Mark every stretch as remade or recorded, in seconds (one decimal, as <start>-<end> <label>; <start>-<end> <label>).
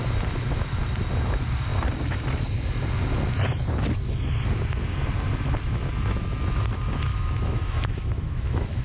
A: 0.0-7.1 recorded; 7.1-8.8 remade